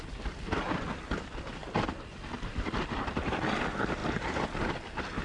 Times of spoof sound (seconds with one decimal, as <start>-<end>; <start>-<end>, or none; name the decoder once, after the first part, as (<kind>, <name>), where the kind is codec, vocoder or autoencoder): 4.0-4.6 (vocoder, BigVGAN v2)